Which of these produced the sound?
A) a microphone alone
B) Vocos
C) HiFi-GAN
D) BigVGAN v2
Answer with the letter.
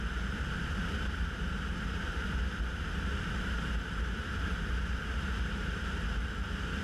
D